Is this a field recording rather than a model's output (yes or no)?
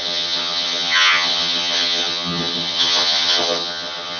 no